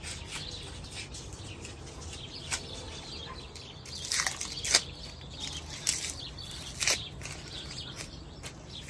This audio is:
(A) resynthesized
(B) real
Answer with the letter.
B